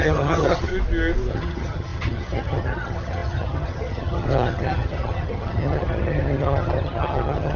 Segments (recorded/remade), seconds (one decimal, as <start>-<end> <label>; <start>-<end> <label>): 0.0-0.7 remade; 0.7-1.3 recorded; 1.3-7.6 remade